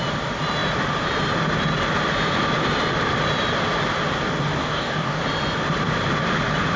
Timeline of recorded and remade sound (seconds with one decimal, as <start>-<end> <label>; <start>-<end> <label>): 0.0-4.6 recorded; 4.6-5.2 remade; 5.2-6.8 recorded